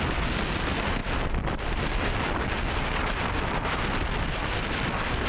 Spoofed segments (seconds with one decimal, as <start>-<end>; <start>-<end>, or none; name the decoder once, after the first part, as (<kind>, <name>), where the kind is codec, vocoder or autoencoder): none